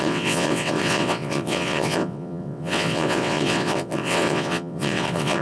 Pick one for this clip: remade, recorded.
remade